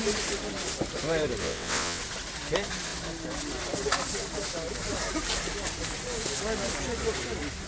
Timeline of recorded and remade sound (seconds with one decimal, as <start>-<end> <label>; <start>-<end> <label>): 0.0-1.4 recorded; 1.4-2.0 remade; 2.0-7.7 recorded